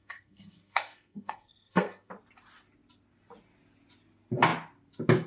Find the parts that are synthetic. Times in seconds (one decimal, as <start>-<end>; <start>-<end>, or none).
0.0-2.1

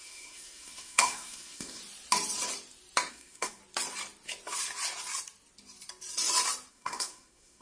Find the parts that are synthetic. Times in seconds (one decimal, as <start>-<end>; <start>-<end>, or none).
0.0-1.8; 3.1-3.6; 6.7-7.6

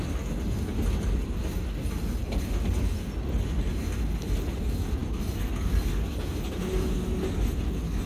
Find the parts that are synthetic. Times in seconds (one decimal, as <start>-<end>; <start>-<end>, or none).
none